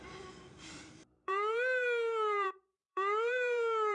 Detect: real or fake fake